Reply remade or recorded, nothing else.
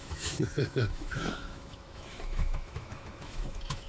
remade